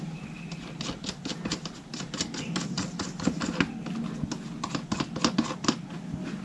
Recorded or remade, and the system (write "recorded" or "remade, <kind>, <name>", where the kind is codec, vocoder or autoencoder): recorded